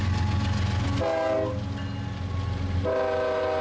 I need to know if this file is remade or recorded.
recorded